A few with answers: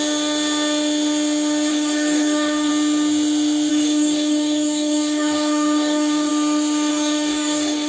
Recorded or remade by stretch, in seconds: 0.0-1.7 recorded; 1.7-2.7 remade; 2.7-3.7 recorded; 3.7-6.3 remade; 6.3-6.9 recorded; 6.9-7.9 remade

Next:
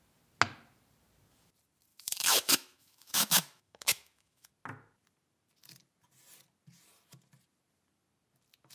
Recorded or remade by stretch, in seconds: 0.0-1.9 recorded; 1.9-4.5 remade; 4.5-8.7 recorded

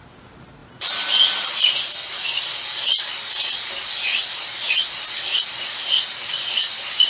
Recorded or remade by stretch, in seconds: 0.0-7.1 recorded

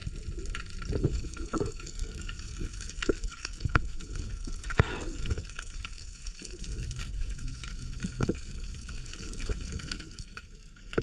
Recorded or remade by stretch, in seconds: 0.0-1.0 recorded; 1.0-11.0 remade